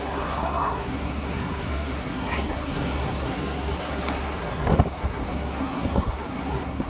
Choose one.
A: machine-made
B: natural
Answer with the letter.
A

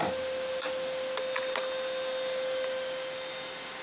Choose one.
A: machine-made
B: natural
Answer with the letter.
B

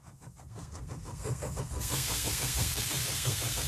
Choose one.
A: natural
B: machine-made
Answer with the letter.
B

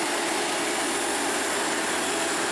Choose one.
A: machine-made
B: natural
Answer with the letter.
B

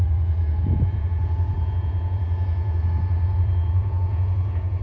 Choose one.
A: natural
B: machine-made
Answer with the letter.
B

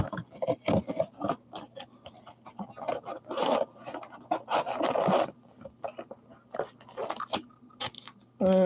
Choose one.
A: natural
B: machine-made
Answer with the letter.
A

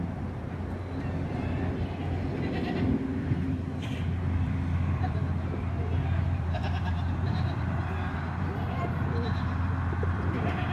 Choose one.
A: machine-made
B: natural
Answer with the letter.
A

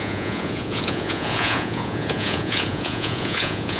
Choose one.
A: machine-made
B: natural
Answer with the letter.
A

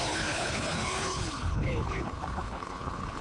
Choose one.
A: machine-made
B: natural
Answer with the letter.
A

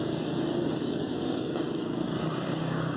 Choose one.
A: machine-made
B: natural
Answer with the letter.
A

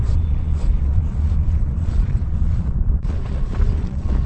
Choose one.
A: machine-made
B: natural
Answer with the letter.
A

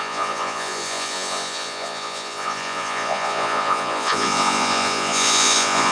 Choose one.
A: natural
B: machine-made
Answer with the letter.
B